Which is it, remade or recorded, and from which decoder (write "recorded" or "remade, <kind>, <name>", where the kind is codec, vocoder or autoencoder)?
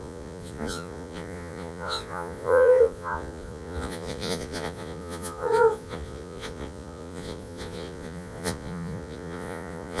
remade, vocoder, Vocos